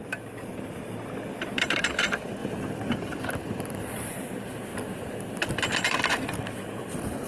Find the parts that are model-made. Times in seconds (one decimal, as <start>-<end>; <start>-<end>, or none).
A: 1.5-2.4; 2.9-4.7; 6.1-7.3